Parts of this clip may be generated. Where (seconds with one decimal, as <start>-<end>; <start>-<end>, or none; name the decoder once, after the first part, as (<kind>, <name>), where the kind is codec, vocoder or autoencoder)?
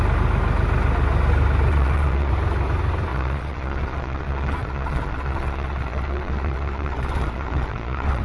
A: 1.7-2.3 (vocoder, Vocos); 3.1-8.2